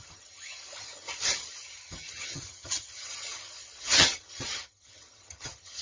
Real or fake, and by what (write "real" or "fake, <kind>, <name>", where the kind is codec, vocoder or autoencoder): fake, vocoder, HiFi-GAN